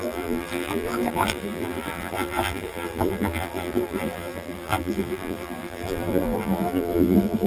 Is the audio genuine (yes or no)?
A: no